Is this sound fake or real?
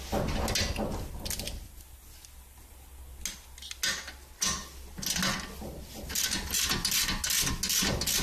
real